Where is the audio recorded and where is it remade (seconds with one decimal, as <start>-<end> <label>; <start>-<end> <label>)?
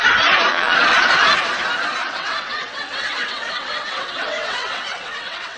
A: 0.0-0.5 recorded; 0.5-1.1 remade; 1.1-2.0 recorded; 2.0-5.6 remade